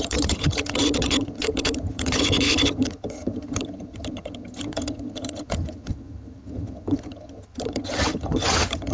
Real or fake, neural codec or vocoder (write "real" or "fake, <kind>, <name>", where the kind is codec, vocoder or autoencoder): fake, vocoder, HiFi-GAN